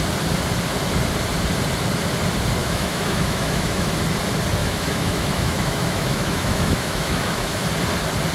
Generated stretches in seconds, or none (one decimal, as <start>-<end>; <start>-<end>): 2.6-3.9; 4.6-7.6

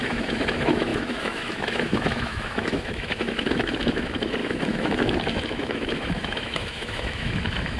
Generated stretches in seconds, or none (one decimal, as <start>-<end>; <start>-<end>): 0.0-7.8

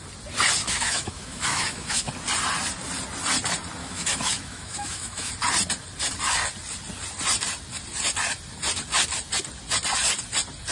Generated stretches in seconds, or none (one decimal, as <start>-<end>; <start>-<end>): 0.6-2.1; 3.8-5.3

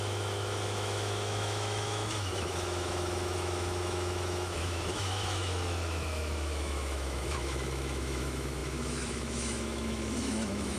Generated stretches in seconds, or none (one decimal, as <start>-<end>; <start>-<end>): 0.0-10.8

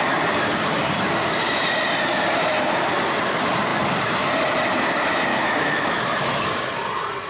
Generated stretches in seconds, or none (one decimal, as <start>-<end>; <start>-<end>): 5.3-6.4

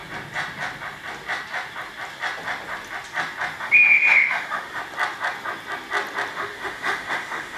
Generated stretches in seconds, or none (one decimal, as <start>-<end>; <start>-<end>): 3.6-4.8; 6.3-7.6

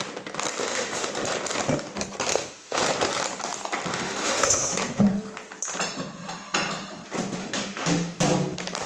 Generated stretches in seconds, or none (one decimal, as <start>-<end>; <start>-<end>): 0.6-1.1; 2.3-2.8; 3.9-4.7; 7.4-8.2